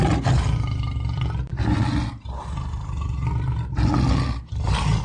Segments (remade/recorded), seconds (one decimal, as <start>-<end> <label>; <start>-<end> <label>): 0.0-5.0 recorded